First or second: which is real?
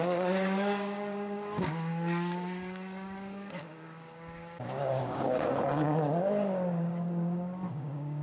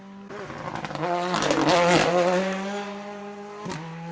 second